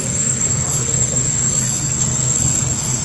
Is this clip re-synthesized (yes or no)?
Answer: yes